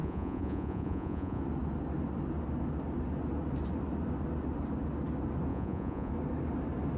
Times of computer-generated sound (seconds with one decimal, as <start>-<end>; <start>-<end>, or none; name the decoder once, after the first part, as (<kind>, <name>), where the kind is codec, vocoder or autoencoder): 0.0-1.4 (vocoder, Vocos); 5.5-6.1